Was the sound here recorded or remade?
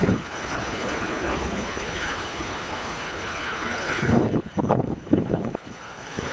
remade